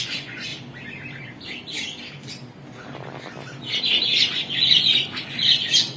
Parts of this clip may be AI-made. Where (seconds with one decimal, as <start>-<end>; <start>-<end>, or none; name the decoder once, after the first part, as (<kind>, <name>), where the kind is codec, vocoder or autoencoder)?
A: 0.0-0.5 (vocoder, Vocos); 3.8-6.0